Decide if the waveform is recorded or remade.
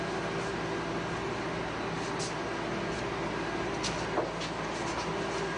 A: recorded